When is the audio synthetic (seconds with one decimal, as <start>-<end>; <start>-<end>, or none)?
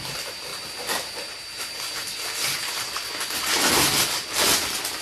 none